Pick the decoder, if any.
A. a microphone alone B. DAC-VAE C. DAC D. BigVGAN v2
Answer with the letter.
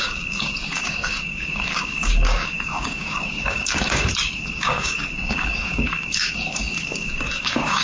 C